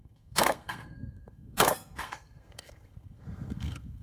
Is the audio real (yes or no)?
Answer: no